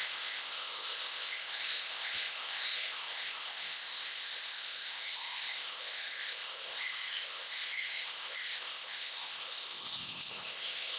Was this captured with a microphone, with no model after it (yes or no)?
no